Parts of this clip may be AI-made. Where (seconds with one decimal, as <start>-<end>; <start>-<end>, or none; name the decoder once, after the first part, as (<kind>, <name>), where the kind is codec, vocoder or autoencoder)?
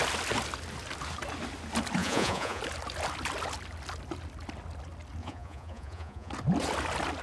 2.0-2.6 (vocoder, Vocos); 5.2-6.3